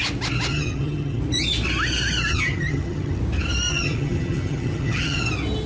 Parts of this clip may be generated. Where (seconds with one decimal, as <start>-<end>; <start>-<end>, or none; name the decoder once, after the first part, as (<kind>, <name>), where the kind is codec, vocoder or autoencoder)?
0.5-1.2 (vocoder, HiFi-GAN); 2.3-3.2; 3.7-5.2